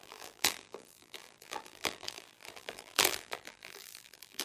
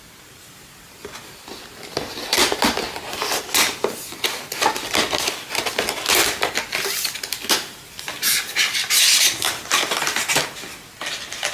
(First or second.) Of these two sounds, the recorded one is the second